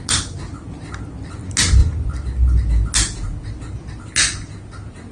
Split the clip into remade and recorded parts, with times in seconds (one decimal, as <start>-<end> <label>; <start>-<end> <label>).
0.0-5.1 recorded